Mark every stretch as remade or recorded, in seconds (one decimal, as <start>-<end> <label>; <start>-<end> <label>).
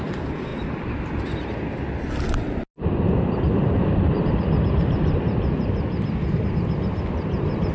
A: 0.0-7.7 recorded